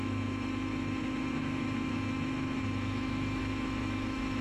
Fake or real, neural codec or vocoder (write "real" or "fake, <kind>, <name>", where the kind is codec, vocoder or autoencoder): fake, autoencoder, DAC-VAE